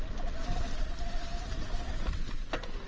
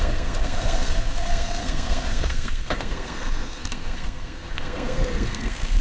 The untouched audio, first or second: first